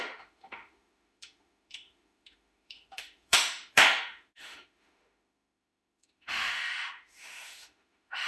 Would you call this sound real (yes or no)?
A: no